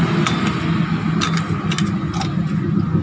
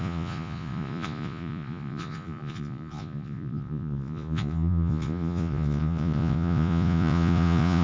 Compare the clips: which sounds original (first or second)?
first